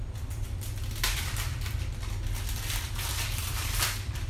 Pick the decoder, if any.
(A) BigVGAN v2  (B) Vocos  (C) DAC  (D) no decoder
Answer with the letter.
A